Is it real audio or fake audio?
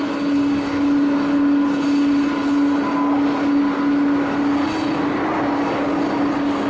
real